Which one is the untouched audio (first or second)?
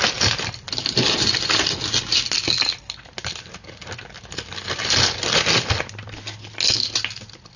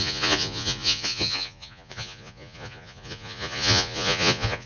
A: first